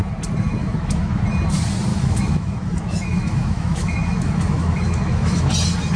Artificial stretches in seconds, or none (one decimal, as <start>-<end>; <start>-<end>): 0.6-1.2; 1.9-5.5